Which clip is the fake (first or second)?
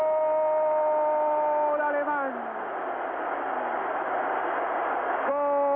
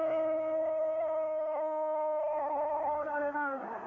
second